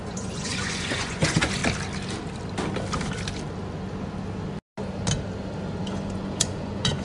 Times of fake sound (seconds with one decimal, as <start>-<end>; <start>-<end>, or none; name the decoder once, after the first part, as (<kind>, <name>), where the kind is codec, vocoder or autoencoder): 0.0-1.6 (vocoder, Vocos); 5.8-7.0